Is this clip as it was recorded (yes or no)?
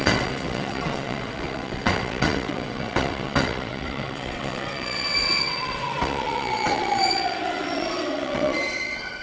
no